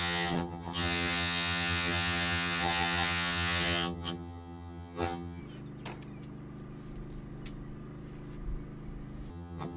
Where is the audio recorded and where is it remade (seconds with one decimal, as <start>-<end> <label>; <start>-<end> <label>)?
0.0-5.4 remade; 5.4-9.3 recorded; 9.3-9.8 remade